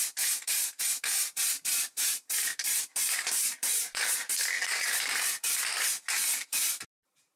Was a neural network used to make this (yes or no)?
yes